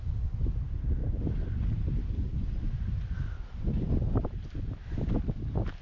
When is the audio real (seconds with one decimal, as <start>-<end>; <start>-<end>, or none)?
0.0-5.8